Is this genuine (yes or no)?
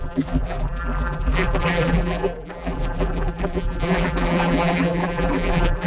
no